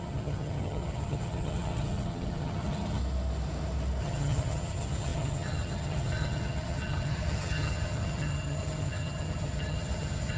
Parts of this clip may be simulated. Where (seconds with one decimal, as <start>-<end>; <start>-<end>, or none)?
0.0-3.0; 4.0-10.4